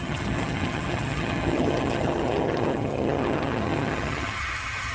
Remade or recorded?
remade